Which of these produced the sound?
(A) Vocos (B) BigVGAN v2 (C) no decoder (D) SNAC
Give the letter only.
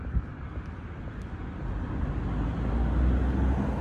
C